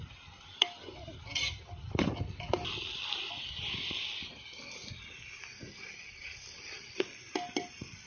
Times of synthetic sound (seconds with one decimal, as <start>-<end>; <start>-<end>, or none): none